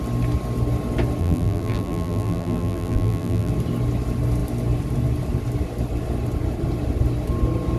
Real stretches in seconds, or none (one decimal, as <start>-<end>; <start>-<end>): 0.0-1.2; 3.5-7.8